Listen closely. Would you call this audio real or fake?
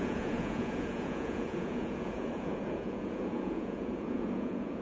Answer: fake